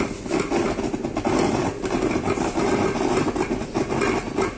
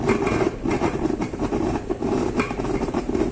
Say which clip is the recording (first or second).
first